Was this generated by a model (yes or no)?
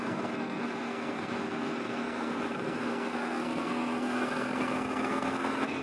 yes